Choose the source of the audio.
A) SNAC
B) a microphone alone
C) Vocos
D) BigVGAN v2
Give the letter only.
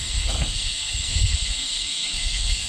A